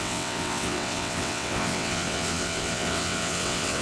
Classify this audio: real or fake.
fake